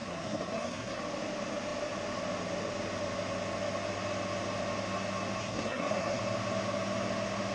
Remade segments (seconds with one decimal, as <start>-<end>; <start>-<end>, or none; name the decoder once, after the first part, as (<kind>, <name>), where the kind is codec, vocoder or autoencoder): 0.0-1.0 (codec, SNAC); 5.4-6.2